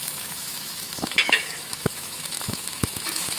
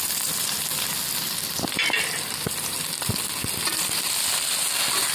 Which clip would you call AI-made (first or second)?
first